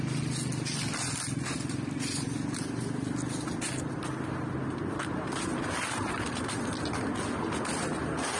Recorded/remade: recorded